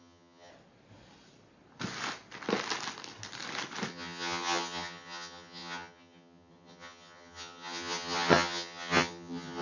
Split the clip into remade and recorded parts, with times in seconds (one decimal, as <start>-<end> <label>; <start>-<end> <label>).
0.0-0.5 remade; 0.5-3.9 recorded; 3.9-9.6 remade